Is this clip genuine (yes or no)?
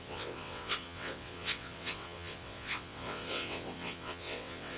no